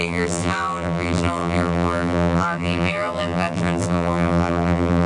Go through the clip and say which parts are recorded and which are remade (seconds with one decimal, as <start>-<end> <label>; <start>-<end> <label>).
0.0-5.1 remade